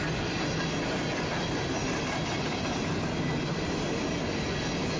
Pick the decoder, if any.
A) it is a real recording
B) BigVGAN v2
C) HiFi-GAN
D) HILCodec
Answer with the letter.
A